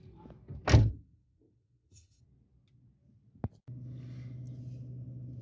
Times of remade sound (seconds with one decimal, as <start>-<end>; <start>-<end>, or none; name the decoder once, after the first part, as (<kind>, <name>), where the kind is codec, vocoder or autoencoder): 0.8-2.2 (codec, SNAC)